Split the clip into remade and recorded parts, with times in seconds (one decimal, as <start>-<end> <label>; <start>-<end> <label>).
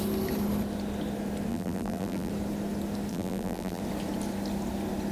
0.0-1.5 recorded; 1.5-2.3 remade; 2.3-3.1 recorded; 3.1-3.8 remade; 3.8-5.1 recorded